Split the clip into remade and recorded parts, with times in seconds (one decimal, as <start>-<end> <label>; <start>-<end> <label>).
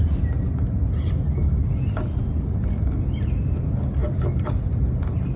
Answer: 0.0-5.4 recorded